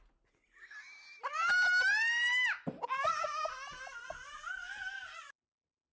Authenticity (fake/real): real